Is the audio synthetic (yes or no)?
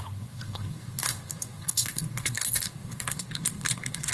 yes